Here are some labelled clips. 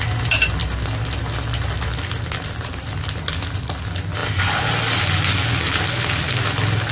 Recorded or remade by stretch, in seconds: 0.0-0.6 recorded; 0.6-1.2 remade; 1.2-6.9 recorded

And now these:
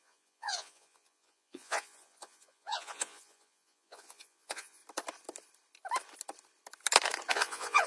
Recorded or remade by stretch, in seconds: 0.0-4.8 remade; 4.8-7.3 recorded; 7.3-7.9 remade

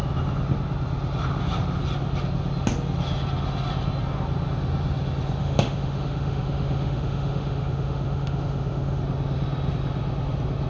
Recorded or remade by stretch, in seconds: 0.0-5.4 recorded; 5.4-9.0 remade; 9.0-10.7 recorded

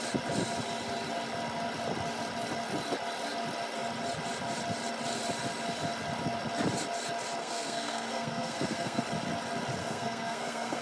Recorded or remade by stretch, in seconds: 0.0-7.4 recorded; 7.4-9.0 remade; 9.0-9.8 recorded; 9.8-10.8 remade